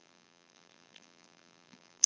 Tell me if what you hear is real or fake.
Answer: fake